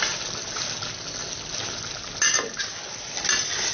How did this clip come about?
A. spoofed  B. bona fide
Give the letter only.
B